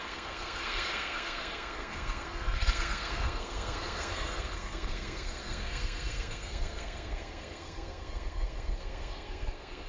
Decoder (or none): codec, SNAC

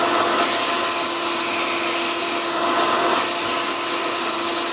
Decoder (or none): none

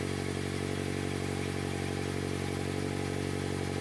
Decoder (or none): none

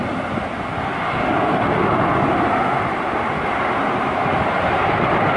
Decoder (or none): none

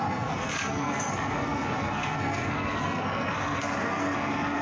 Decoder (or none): codec, SNAC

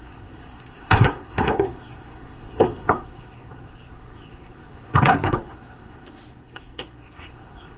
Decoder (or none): codec, SNAC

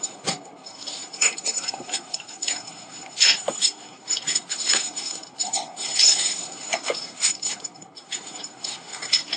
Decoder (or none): codec, SNAC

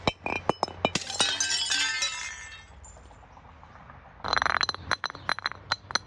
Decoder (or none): none